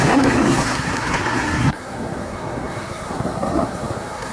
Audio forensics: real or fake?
fake